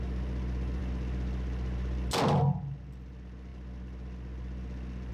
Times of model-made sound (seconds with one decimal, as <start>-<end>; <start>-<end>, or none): none